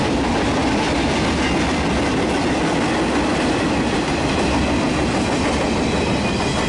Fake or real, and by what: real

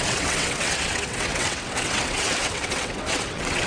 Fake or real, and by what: fake, vocoder, WaveNeXt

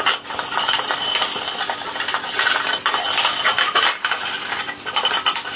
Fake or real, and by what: real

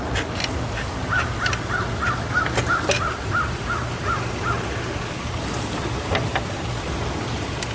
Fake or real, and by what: real